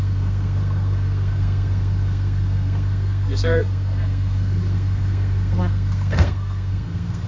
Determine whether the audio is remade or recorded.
remade